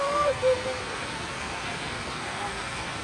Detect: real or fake fake